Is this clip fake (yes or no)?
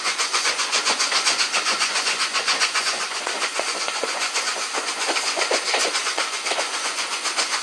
yes